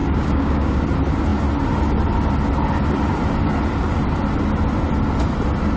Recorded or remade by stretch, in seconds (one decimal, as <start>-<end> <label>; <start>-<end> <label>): 0.0-0.8 remade; 0.8-5.8 recorded